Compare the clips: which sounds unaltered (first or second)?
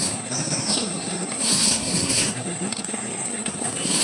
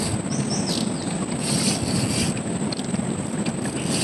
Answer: second